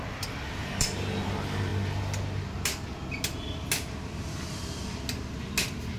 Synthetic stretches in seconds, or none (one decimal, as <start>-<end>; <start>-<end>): none